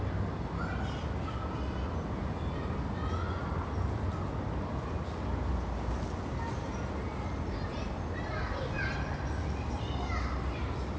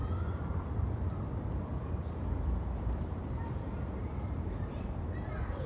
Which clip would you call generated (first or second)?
second